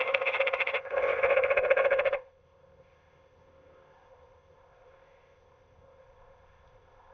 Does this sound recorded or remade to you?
remade